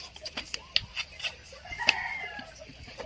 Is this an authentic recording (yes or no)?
yes